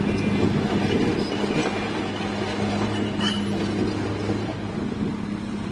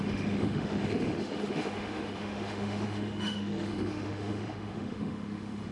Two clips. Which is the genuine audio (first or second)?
first